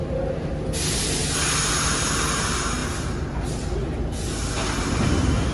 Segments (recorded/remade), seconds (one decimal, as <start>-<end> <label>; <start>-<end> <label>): 0.0-1.2 remade; 1.2-1.9 recorded; 1.9-2.8 remade; 2.8-4.8 recorded; 4.8-5.5 remade